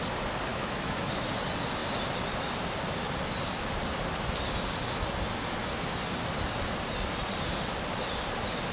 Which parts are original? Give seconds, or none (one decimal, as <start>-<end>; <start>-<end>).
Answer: 0.0-0.5; 1.2-8.7

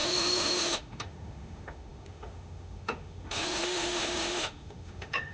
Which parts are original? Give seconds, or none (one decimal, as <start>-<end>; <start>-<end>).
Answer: none